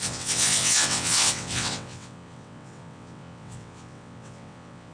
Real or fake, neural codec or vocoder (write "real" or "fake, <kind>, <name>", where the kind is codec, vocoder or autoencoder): fake, vocoder, WaveNeXt